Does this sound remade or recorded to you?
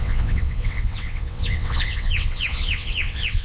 remade